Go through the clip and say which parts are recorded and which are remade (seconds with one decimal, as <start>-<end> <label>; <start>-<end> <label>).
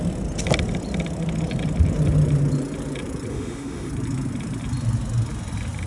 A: 0.0-3.3 recorded; 3.3-3.9 remade; 3.9-5.9 recorded